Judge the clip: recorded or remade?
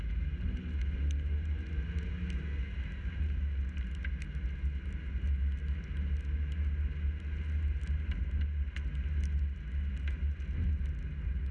recorded